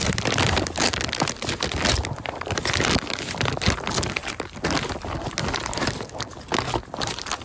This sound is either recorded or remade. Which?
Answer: recorded